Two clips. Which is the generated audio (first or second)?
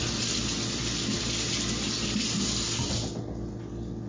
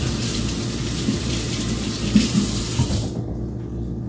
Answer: second